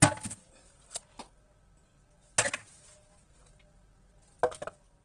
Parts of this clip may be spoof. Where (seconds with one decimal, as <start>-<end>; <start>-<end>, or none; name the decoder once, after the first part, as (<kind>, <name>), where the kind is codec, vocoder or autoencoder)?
none